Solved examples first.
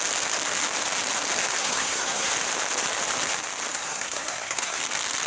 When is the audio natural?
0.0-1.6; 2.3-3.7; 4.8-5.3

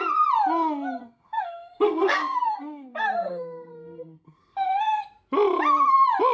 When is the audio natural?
0.0-1.0; 4.8-6.3

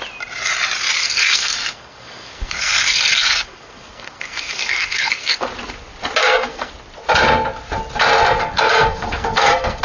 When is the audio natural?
0.0-1.0; 5.5-6.2; 6.7-8.4

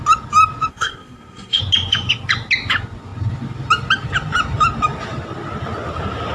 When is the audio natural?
0.0-0.7; 1.6-6.3

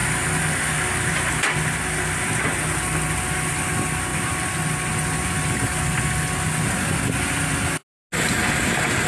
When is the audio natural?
0.0-9.1